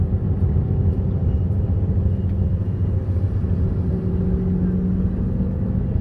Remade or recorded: recorded